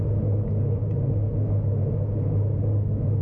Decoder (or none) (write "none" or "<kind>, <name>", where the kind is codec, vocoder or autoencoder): none